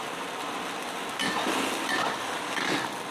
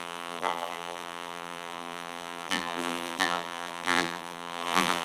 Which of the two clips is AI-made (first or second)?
second